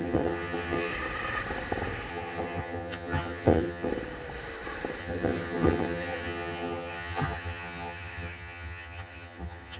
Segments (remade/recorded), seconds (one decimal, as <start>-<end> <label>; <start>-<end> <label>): 0.0-0.9 remade; 0.9-2.1 recorded; 2.1-3.9 remade; 3.9-5.0 recorded; 5.0-9.8 remade